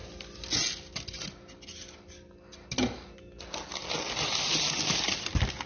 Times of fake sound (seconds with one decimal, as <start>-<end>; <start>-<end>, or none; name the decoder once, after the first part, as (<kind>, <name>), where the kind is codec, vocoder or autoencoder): none